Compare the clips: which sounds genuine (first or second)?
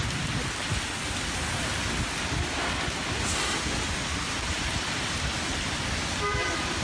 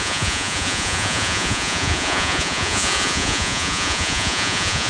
first